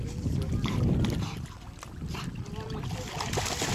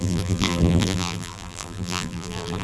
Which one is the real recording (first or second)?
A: first